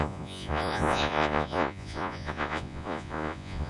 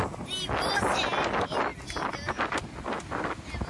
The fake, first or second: first